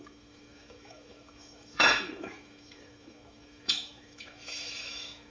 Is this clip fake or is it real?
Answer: fake